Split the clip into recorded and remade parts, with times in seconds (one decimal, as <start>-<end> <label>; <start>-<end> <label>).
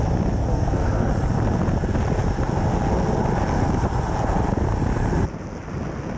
0.0-0.4 recorded; 0.4-1.1 remade; 1.1-6.2 recorded